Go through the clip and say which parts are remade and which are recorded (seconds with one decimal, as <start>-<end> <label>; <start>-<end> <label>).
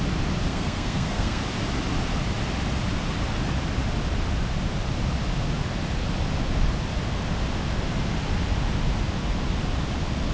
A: 0.0-0.5 recorded; 0.5-1.4 remade; 1.4-10.3 recorded